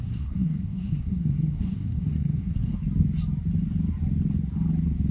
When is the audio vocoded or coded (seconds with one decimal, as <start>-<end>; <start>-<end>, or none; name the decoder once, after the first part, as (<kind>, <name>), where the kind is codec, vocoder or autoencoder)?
0.0-2.7 (codec, SNAC)